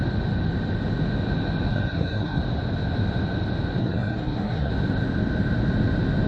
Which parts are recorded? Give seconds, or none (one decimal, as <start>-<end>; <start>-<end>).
0.0-1.7; 2.4-3.8; 4.7-6.3